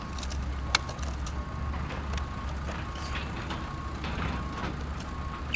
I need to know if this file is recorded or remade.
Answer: recorded